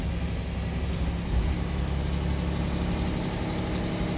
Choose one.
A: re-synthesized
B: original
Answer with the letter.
B